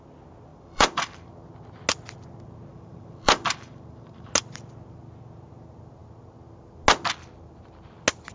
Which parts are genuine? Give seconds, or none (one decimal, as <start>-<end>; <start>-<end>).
0.0-0.5; 1.3-2.7; 4.3-8.3